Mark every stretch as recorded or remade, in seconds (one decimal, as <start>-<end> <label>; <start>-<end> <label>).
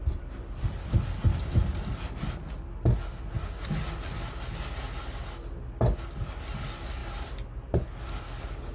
0.0-8.7 recorded